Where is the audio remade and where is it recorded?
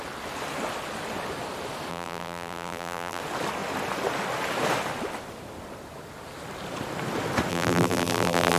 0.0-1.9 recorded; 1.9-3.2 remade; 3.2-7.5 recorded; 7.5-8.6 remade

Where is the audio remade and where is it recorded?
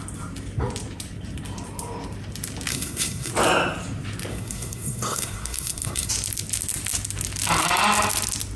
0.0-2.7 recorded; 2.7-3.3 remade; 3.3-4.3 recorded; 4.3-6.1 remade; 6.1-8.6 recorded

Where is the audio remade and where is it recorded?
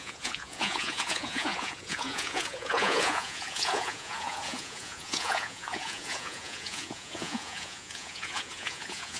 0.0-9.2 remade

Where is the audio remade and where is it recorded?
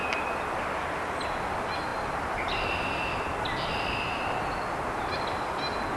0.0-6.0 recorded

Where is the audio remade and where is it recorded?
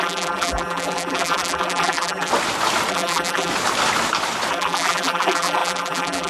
0.0-2.3 remade; 2.3-2.9 recorded; 2.9-3.5 remade; 3.5-4.5 recorded; 4.5-6.3 remade